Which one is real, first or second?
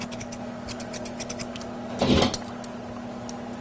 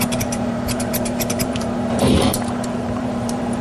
first